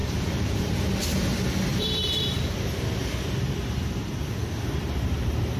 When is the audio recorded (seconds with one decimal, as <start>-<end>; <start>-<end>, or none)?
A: 0.8-1.7; 4.1-4.8